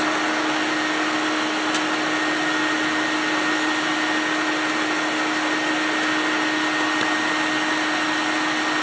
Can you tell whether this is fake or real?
real